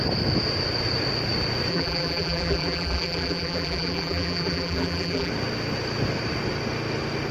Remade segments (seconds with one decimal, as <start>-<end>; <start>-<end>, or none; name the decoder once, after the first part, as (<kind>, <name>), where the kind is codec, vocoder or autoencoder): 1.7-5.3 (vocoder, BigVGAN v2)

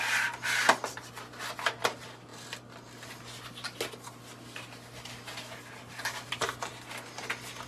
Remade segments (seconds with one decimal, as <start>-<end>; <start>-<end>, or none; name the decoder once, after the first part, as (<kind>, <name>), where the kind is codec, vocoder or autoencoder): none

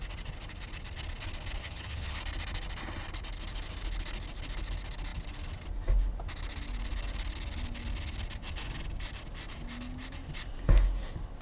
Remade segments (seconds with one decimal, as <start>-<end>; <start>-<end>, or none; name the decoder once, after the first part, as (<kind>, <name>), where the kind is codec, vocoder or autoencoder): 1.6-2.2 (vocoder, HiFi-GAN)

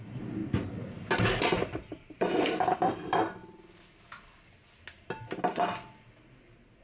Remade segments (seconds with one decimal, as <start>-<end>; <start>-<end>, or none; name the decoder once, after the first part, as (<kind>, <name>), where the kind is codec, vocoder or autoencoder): 0.0-0.4 (vocoder, BigVGAN v2); 1.4-3.4